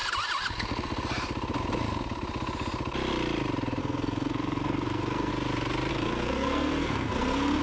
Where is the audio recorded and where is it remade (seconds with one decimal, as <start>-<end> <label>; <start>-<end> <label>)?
0.0-3.8 recorded; 3.8-5.3 remade; 5.3-5.9 recorded; 5.9-7.6 remade